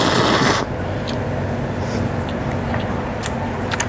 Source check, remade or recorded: recorded